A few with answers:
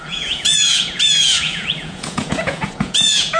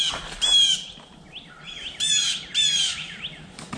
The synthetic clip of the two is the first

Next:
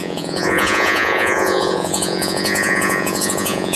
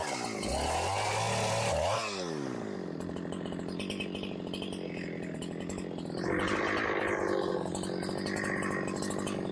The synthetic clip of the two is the first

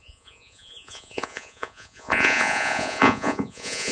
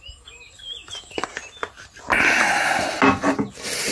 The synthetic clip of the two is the first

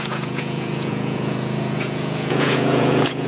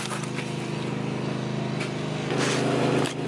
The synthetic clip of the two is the first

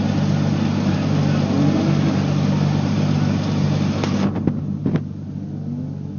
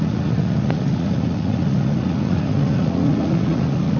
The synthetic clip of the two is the second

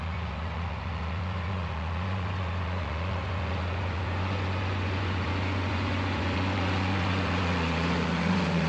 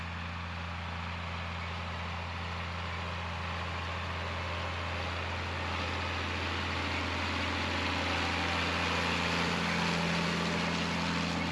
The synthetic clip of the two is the first